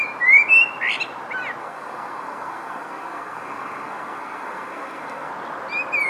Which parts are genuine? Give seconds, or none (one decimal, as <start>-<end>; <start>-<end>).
0.0-1.6; 5.3-6.1